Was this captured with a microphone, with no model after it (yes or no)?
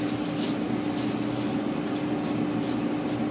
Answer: yes